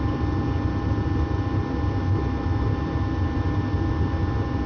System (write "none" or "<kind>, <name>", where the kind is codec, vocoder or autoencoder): none